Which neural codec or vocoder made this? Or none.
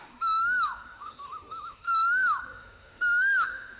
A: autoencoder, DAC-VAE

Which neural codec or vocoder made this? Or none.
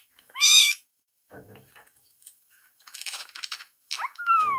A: autoencoder, DAC-VAE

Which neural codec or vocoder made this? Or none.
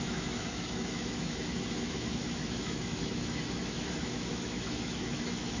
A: autoencoder, DAC-VAE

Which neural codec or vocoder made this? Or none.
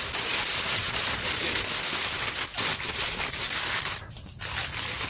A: none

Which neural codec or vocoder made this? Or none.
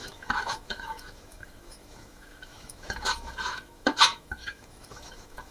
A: autoencoder, DAC-VAE